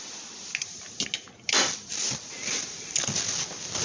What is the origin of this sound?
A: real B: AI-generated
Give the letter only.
A